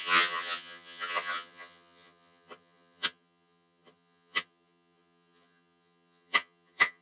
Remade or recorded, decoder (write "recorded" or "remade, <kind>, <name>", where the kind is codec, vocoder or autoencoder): remade, vocoder, HiFi-GAN